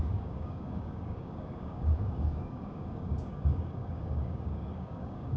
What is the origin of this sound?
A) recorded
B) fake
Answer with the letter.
B